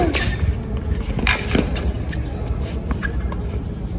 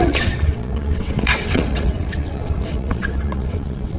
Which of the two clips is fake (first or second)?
second